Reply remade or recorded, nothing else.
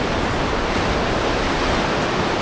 recorded